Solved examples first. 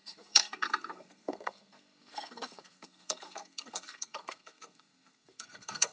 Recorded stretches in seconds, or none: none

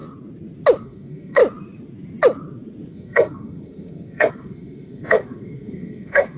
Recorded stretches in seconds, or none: 0.0-0.8; 1.4-2.9

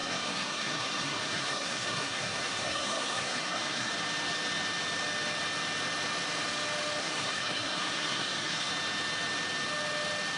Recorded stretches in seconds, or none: 3.9-7.0; 8.7-10.4

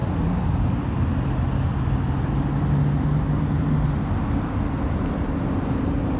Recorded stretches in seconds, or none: 0.0-6.2

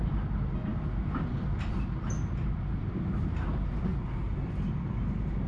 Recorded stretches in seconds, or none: 0.0-5.5

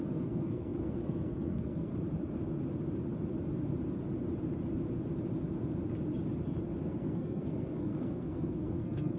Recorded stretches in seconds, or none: 1.9-6.8

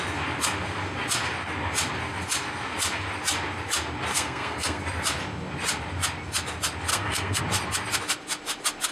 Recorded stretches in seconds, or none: 0.0-4.1; 4.8-6.9; 7.4-8.9